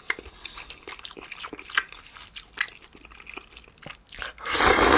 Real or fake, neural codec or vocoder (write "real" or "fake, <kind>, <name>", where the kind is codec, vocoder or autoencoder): real